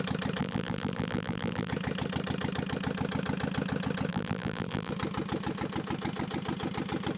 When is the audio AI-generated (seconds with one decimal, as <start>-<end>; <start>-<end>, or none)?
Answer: 0.4-1.7; 4.1-4.9